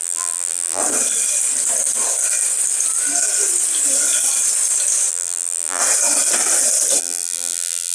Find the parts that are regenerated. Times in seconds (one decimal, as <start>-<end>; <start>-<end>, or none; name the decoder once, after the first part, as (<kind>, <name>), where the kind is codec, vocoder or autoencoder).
0.0-0.8 (vocoder, BigVGAN v2); 5.1-5.8; 7.0-7.9